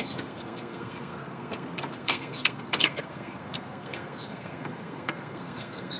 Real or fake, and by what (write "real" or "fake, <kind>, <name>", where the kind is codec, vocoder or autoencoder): fake, codec, SNAC